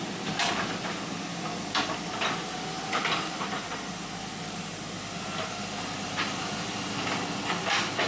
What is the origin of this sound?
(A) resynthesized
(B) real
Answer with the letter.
B